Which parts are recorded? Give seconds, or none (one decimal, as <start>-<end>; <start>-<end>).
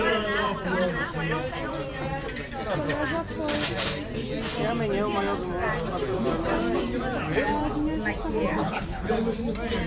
0.0-8.5; 9.1-9.9